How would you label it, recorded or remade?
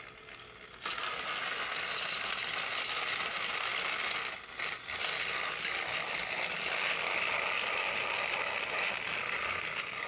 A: recorded